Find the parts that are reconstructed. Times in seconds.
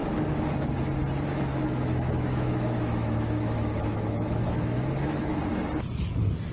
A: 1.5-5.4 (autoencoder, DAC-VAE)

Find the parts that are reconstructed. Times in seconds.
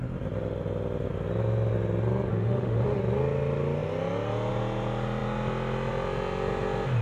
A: 2.3-3.0 (autoencoder, DAC-VAE)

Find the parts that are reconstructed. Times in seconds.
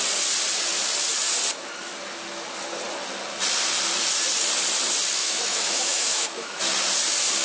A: 5.2-6.6 (autoencoder, DAC-VAE)